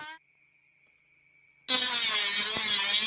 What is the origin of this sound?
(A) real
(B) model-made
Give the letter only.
A